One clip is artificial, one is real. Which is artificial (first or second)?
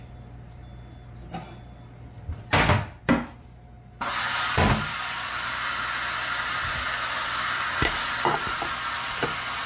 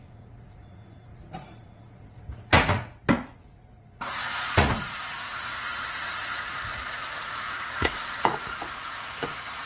second